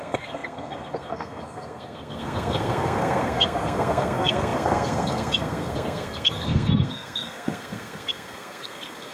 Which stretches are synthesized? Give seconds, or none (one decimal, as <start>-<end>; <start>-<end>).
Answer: 0.0-9.1